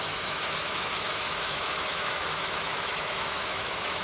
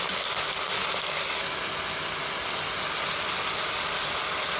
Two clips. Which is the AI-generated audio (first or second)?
first